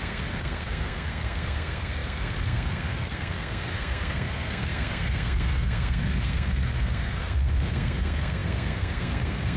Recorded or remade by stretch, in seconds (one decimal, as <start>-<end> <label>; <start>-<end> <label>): 0.0-9.6 remade

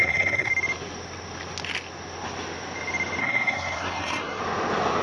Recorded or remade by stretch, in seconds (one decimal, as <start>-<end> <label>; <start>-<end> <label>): 0.0-0.5 remade; 0.5-3.2 recorded; 3.2-4.4 remade; 4.4-5.0 recorded